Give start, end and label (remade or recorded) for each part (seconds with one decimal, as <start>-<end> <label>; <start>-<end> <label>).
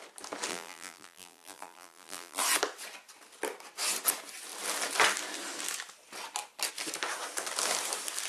0.0-0.5 recorded; 0.5-2.4 remade; 2.4-8.3 recorded